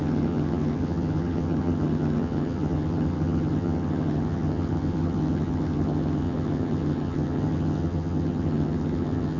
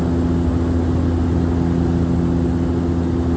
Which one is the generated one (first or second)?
first